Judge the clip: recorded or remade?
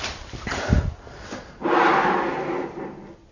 recorded